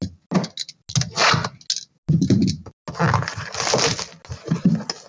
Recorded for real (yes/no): yes